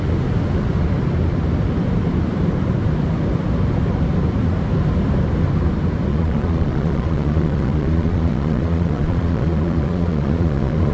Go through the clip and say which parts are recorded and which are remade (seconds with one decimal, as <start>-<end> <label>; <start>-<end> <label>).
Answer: 0.0-6.1 recorded; 6.1-10.9 remade